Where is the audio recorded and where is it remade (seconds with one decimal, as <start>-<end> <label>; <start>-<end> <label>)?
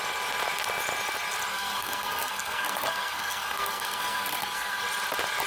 0.0-1.5 recorded; 1.5-4.8 remade; 4.8-5.5 recorded